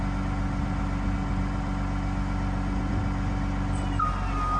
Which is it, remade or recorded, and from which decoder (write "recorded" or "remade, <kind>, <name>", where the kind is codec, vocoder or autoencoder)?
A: recorded